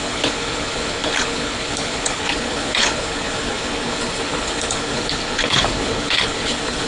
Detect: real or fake fake